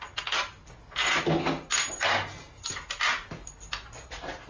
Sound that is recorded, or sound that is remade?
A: recorded